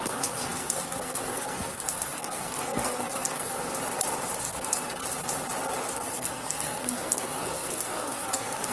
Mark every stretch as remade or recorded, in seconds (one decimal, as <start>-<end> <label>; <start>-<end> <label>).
0.0-3.7 remade; 3.7-4.4 recorded; 4.4-5.0 remade; 5.0-5.9 recorded; 5.9-8.7 remade